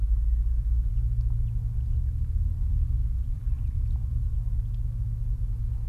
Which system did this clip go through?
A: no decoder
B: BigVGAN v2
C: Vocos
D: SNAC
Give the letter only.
A